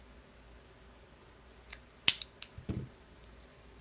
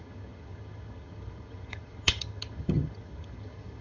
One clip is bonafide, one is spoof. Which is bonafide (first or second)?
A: first